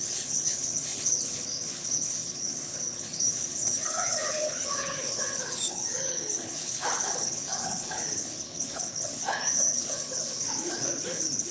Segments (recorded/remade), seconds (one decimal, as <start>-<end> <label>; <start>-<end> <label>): 0.0-11.5 remade